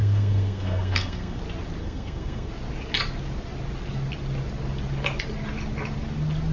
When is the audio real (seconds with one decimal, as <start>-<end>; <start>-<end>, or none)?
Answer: 1.4-1.8; 2.5-6.5